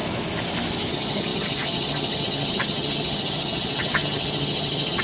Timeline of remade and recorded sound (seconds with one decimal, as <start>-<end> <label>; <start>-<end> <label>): 0.0-0.9 recorded; 0.9-5.0 remade